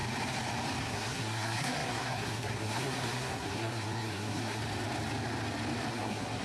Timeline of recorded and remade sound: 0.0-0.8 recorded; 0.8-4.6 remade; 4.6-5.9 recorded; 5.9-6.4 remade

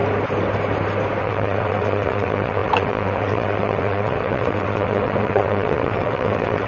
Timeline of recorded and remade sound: 0.0-1.2 recorded; 1.2-6.7 remade

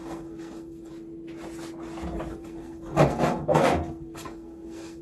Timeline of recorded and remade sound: 0.0-0.9 remade; 0.9-2.3 recorded; 2.3-5.0 remade

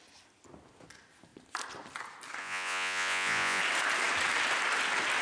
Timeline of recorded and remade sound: 0.0-2.4 recorded; 2.4-3.6 remade; 3.6-5.2 recorded